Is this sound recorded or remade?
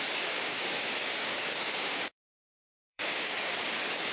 remade